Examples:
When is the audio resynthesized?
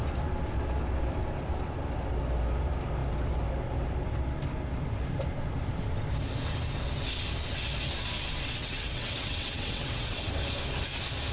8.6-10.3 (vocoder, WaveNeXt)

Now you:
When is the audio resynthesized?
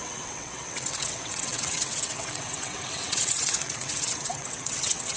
0.0-5.2 (vocoder, WaveNeXt)